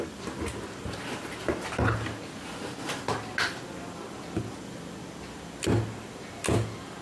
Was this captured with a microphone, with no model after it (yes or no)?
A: yes